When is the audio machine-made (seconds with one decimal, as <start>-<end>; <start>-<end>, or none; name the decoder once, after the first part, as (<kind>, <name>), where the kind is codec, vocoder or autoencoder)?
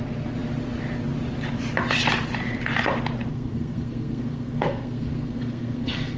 3.3-6.2 (codec, SNAC)